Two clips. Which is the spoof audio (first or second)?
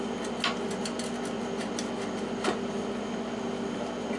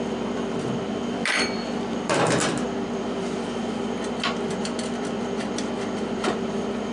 second